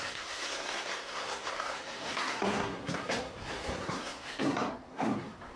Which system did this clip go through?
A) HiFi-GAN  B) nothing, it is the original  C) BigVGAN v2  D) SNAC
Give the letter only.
D